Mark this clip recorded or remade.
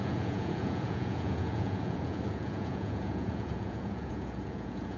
remade